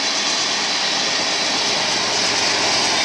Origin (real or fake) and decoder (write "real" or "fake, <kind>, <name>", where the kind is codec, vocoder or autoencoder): real